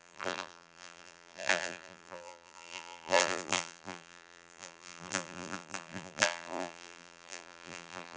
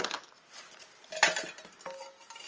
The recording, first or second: second